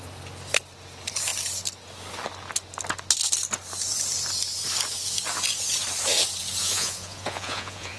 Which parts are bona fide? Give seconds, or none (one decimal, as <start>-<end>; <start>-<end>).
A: 0.0-6.6